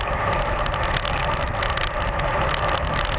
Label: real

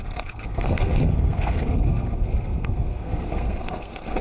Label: fake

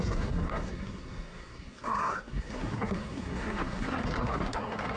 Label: fake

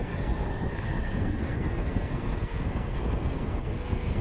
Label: fake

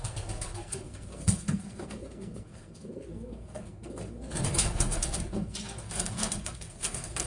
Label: fake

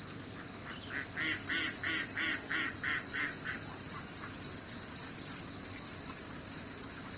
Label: real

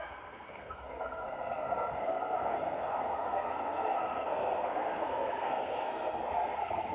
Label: fake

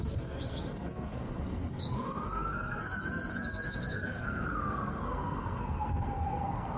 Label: fake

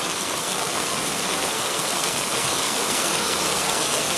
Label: fake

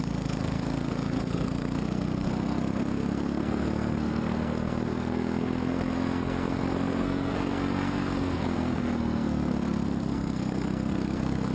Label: fake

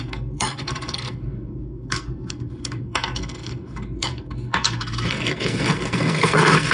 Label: fake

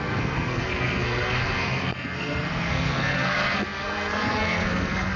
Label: fake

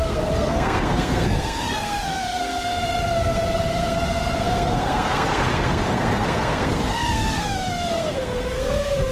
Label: fake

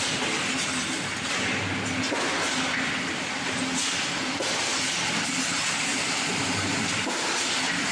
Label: real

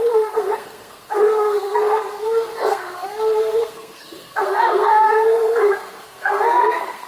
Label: fake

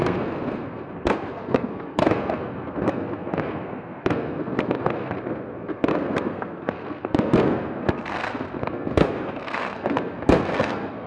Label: fake